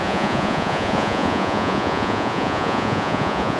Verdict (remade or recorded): remade